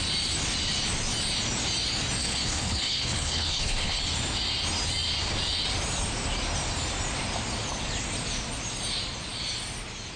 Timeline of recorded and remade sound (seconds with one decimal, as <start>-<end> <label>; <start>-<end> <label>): 0.0-2.2 recorded; 2.2-4.0 remade; 4.0-10.2 recorded

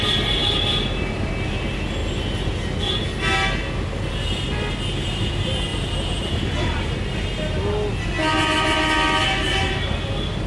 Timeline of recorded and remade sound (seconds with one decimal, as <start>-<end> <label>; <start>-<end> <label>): 0.0-10.5 recorded

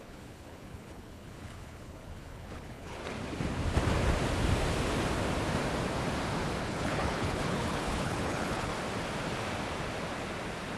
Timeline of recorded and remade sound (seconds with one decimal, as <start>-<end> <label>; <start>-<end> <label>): 0.0-3.0 remade; 3.0-6.6 recorded; 6.6-8.7 remade; 8.7-10.8 recorded